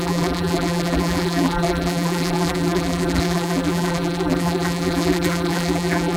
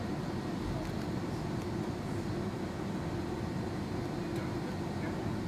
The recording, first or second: second